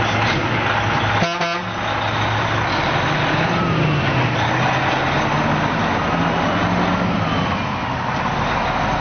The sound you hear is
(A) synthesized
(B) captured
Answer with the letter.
B